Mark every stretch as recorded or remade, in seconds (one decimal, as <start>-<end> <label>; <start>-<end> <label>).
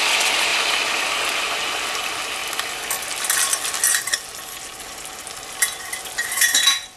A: 0.0-7.0 recorded